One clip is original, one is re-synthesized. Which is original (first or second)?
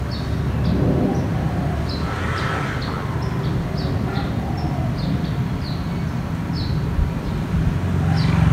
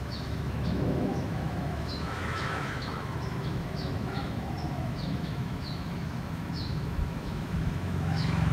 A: first